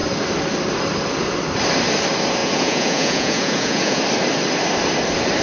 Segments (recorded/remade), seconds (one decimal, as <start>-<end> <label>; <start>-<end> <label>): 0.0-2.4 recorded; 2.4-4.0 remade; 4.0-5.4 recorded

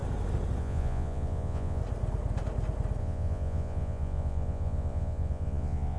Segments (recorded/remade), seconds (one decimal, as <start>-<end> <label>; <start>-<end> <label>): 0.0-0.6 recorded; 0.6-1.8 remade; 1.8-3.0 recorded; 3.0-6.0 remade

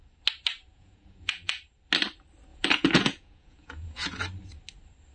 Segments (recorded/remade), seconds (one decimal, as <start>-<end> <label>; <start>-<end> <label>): 0.0-0.7 recorded; 0.7-1.6 remade; 1.6-2.5 recorded; 2.5-4.2 remade; 4.2-5.1 recorded

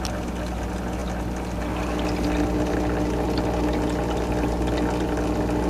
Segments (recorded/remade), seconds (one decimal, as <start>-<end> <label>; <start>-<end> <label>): 0.0-5.7 recorded